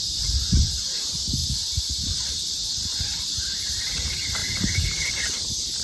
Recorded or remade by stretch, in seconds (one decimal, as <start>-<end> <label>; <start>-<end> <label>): 0.0-1.4 remade; 1.4-2.7 recorded; 2.7-5.8 remade